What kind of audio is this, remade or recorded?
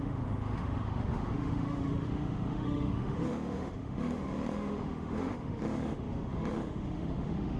remade